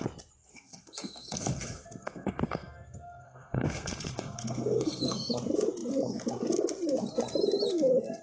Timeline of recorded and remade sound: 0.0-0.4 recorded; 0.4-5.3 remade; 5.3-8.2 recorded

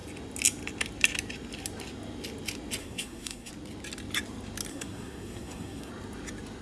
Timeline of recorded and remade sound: 0.0-2.8 recorded; 2.8-3.5 remade; 3.5-4.7 recorded; 4.7-5.9 remade; 5.9-6.6 recorded